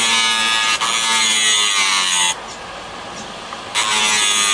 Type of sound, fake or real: real